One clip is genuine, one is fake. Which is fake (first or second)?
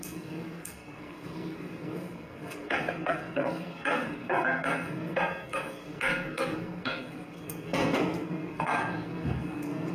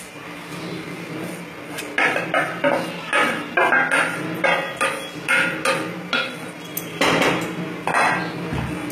first